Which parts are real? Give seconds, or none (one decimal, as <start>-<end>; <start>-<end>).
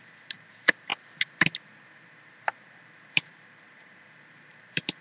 0.9-2.0